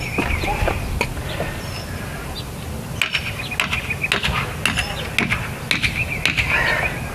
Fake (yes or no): no